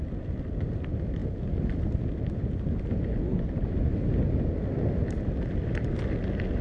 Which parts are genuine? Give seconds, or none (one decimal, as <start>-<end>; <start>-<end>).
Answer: 0.0-6.6